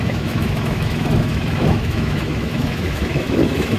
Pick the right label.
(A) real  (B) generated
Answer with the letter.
B